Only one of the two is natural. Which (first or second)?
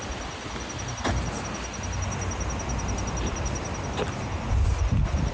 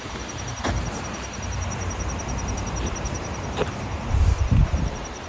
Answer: first